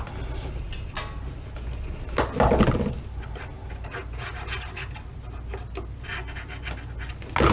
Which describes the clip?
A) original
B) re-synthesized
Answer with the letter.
A